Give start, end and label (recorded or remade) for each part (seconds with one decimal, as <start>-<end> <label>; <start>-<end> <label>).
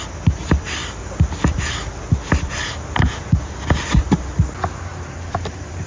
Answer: 0.0-4.9 recorded; 4.9-5.9 remade